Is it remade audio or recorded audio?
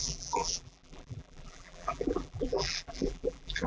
remade